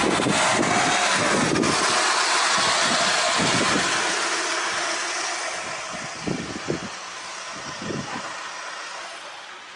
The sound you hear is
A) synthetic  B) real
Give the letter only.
B